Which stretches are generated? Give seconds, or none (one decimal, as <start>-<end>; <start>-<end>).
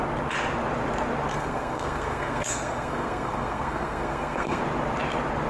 1.3-4.6